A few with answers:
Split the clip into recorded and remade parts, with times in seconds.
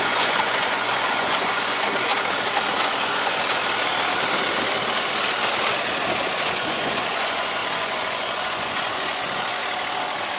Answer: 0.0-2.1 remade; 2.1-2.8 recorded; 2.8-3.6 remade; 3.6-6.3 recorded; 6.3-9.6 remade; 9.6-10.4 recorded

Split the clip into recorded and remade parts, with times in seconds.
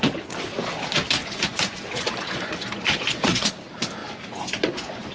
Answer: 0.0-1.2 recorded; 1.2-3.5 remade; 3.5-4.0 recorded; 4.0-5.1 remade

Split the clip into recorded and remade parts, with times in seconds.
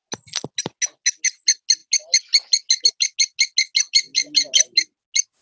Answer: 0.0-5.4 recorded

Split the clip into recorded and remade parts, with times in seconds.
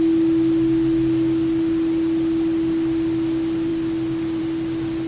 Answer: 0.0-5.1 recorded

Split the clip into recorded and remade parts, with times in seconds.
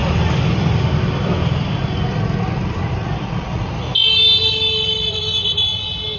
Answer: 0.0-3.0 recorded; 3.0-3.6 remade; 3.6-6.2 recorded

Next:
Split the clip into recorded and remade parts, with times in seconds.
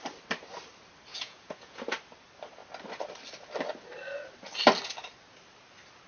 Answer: 0.0-1.1 recorded; 1.1-1.8 remade; 1.8-6.1 recorded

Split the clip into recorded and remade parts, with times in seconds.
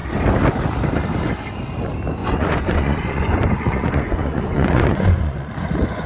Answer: 0.0-2.2 recorded; 2.2-6.1 remade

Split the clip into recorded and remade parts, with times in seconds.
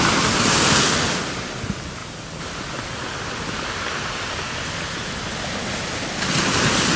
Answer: 0.0-7.0 recorded